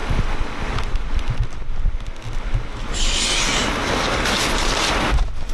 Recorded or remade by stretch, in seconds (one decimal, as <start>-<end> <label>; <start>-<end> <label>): 0.0-2.4 remade; 2.4-5.5 recorded